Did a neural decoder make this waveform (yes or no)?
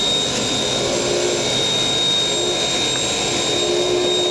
no